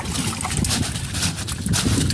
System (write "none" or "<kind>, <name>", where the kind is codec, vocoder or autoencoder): none